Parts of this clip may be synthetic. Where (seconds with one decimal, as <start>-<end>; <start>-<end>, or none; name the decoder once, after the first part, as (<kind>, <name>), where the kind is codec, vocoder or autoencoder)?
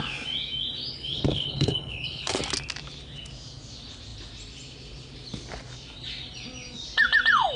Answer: 0.9-2.4 (codec, HILCodec)